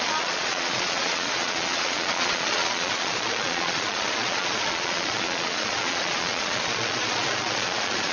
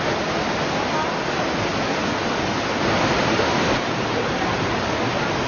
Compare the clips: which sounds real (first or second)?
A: second